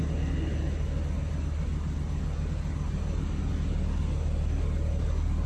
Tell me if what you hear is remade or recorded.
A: recorded